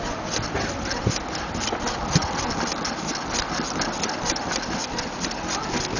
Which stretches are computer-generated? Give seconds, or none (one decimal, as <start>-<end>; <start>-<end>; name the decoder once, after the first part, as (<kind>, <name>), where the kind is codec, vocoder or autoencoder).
none